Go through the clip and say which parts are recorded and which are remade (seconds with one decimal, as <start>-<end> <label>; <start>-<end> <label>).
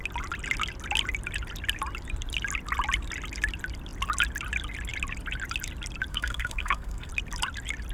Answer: 0.0-6.1 recorded; 6.1-7.1 remade; 7.1-7.9 recorded